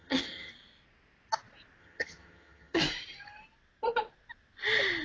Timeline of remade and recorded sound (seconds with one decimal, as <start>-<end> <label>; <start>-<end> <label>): 0.0-0.5 remade; 0.5-1.8 recorded; 1.8-2.8 remade; 2.8-5.0 recorded